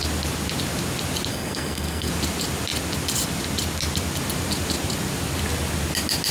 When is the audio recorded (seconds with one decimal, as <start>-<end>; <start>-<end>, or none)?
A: 0.0-1.3; 2.1-6.3